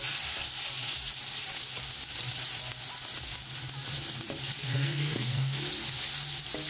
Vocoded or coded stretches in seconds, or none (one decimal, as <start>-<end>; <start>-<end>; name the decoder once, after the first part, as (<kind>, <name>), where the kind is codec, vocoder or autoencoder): 4.6-5.7 (codec, SNAC)